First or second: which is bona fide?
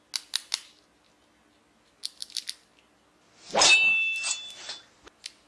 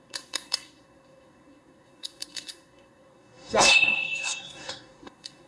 first